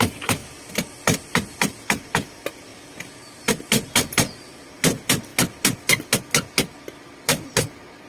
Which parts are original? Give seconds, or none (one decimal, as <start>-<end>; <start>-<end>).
0.0-8.1